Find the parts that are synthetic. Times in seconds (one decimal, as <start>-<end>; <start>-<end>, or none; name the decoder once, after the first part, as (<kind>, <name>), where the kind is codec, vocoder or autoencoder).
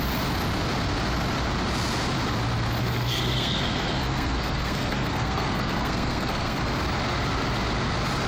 2.8-6.6 (codec, SNAC)